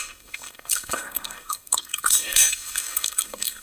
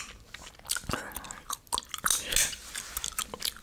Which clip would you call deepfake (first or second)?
first